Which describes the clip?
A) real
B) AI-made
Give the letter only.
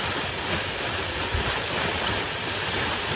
A